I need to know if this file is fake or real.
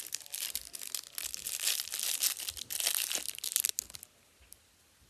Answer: real